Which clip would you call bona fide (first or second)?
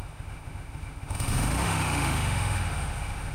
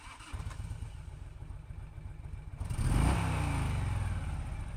second